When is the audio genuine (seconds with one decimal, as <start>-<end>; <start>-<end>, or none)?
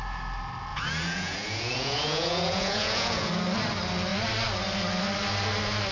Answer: 0.0-0.7; 3.3-5.9